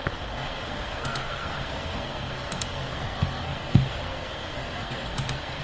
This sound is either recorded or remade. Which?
remade